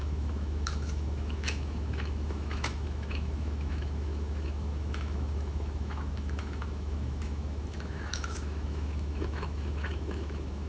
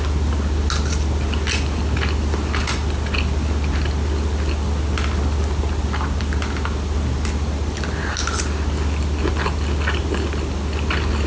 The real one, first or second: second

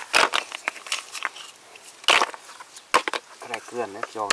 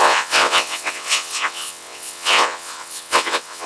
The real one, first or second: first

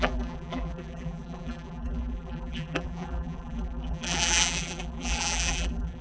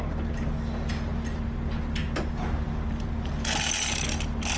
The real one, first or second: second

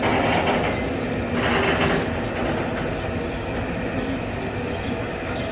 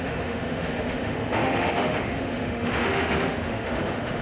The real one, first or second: first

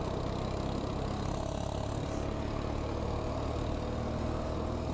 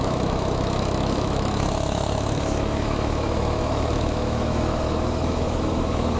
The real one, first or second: first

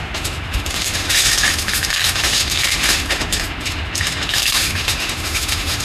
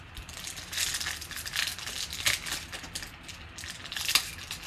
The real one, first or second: second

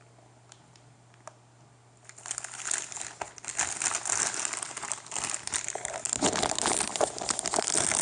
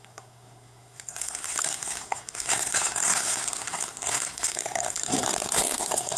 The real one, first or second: first